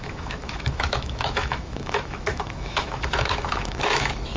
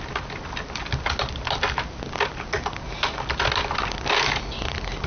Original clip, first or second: second